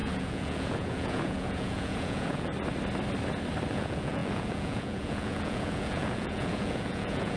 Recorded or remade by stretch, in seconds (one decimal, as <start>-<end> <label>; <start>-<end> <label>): 0.0-2.5 remade; 2.5-3.7 recorded; 3.7-7.4 remade